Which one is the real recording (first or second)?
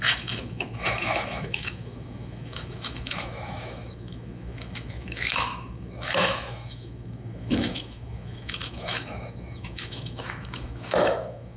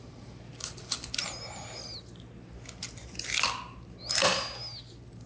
second